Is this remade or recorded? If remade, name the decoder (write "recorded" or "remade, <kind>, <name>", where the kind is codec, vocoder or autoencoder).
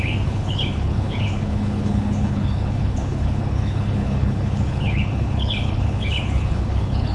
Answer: remade, codec, HILCodec